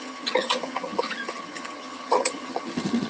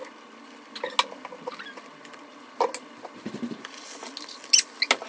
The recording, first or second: second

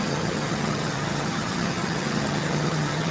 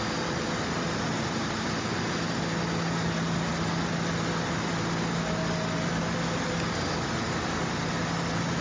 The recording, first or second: second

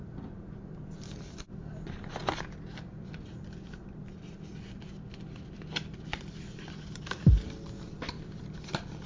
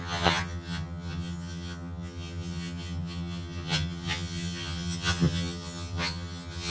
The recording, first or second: first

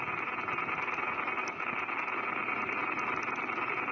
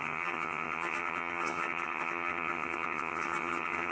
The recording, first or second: first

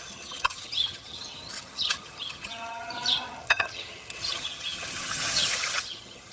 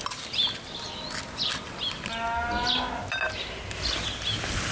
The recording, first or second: second